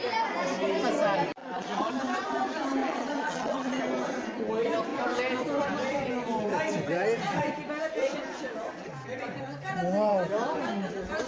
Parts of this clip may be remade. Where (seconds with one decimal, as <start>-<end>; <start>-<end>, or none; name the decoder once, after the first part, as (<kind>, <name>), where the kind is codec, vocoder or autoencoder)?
1.4-1.9 (vocoder, Vocos); 2.8-3.8